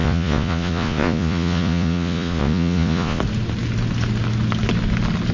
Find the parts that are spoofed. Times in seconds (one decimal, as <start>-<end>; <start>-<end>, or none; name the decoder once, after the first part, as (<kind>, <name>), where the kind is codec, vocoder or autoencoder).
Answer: 0.0-3.2 (vocoder, Vocos)